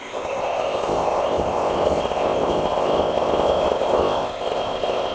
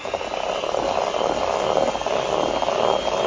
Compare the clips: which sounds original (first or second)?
second